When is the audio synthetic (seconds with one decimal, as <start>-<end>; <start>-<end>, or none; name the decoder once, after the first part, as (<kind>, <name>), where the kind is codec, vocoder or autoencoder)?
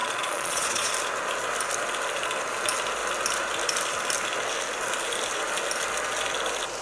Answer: 0.0-0.9 (vocoder, Vocos)